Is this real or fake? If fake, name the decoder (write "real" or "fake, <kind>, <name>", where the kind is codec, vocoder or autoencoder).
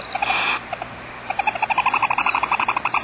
real